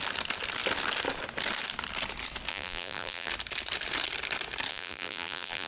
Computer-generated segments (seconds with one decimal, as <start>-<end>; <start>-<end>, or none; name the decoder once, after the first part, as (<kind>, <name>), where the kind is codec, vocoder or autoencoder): 2.5-3.3 (vocoder, BigVGAN v2); 4.7-5.7